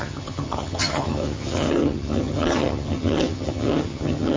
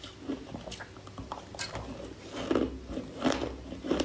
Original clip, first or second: second